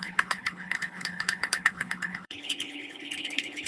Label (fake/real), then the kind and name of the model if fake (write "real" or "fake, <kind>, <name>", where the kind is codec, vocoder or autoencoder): fake, codec, HILCodec